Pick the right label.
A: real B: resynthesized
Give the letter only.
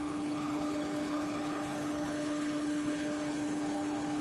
B